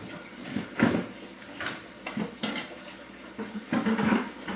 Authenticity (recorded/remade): recorded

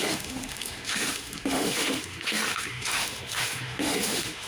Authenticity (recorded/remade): remade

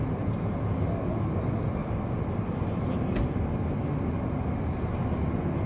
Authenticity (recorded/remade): recorded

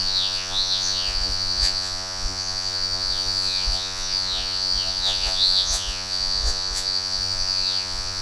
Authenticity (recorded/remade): remade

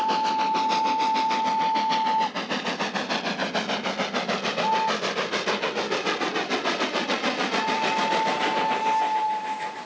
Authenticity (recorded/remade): recorded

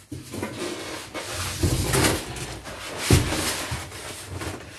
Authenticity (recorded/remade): recorded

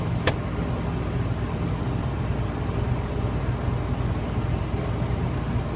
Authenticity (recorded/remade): recorded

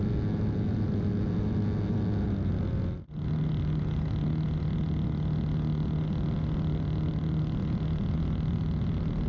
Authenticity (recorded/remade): recorded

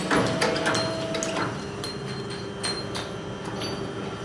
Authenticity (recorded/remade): recorded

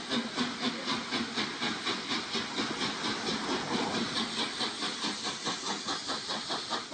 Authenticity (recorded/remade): recorded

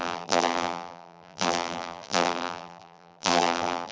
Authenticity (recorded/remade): remade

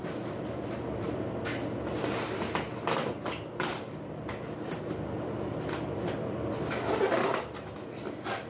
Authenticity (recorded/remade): recorded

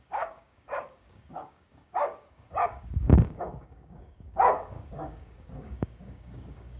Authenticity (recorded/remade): remade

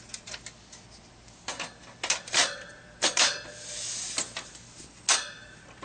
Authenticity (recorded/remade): recorded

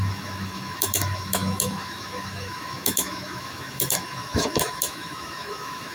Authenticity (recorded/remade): remade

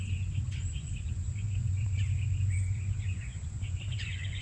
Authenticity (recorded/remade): remade